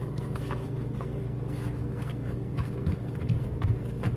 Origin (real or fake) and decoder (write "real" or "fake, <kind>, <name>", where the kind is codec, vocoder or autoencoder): fake, codec, SNAC